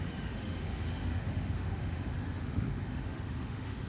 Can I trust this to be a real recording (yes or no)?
no